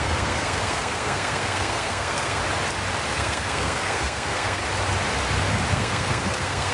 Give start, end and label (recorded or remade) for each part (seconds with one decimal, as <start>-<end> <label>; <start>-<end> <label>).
0.0-2.4 remade; 2.4-3.1 recorded; 3.1-4.6 remade; 4.6-5.7 recorded; 5.7-6.7 remade